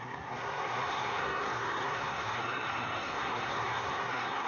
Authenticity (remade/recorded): remade